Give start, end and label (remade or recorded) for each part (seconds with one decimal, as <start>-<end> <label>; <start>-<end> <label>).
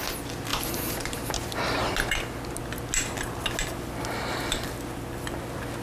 0.0-5.8 recorded